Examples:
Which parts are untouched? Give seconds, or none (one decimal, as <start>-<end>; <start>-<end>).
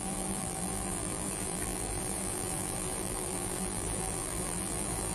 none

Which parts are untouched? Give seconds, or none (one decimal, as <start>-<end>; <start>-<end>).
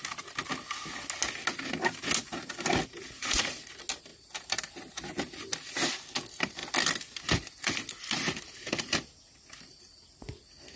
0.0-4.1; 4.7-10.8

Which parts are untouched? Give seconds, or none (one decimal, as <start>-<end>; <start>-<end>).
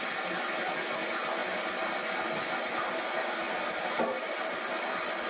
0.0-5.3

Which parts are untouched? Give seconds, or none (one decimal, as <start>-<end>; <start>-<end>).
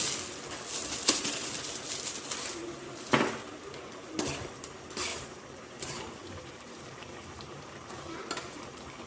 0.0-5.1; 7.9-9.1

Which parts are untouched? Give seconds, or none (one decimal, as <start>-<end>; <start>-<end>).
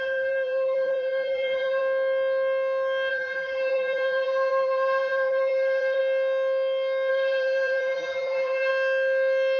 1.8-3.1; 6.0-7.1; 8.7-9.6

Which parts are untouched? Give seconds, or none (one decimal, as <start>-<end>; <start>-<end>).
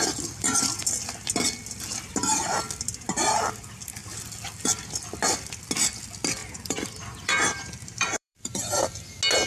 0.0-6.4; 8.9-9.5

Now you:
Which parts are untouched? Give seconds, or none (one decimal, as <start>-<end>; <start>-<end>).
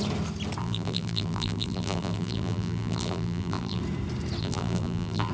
0.0-0.6; 3.8-4.4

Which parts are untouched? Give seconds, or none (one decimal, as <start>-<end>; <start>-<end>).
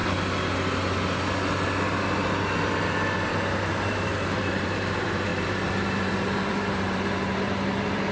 0.0-3.3